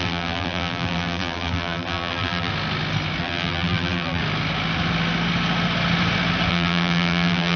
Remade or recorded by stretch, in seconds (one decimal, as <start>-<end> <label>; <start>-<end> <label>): 0.0-2.5 remade; 2.5-3.2 recorded; 3.2-4.2 remade; 4.2-6.5 recorded; 6.5-7.6 remade